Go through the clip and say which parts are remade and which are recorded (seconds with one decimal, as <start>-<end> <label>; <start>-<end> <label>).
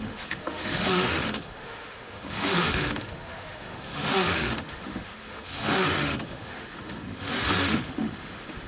0.0-8.7 remade